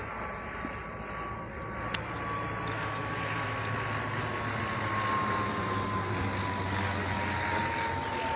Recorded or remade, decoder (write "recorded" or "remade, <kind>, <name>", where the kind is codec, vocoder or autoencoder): recorded